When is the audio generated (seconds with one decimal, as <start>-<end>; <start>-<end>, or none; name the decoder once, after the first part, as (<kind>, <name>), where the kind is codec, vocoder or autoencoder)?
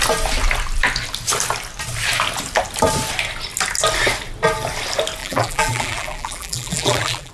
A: 5.2-7.3 (vocoder, BigVGAN v2)